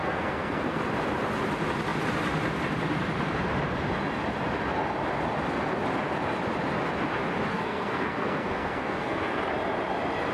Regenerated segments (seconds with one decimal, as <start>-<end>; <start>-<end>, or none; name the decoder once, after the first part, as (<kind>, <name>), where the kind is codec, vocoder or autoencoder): 0.0-0.8 (codec, SNAC); 7.5-9.4